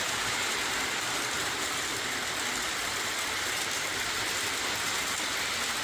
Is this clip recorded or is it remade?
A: remade